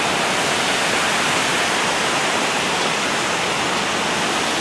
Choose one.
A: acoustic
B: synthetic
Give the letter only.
A